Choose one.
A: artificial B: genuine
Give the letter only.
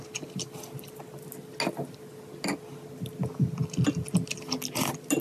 B